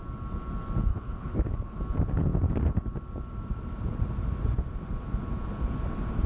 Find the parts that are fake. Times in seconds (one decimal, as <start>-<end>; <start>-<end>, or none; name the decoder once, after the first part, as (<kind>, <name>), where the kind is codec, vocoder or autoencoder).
0.9-1.8 (codec, HILCodec)